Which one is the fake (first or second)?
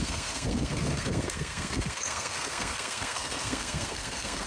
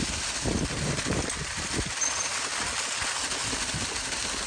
first